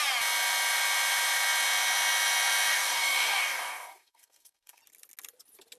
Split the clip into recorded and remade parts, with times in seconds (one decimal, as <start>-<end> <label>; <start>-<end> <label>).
0.0-2.7 recorded; 2.7-4.8 remade; 4.8-5.8 recorded